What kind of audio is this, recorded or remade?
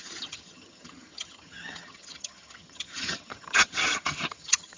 remade